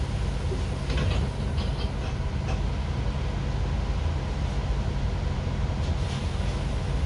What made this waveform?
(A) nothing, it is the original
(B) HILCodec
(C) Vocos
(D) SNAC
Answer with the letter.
A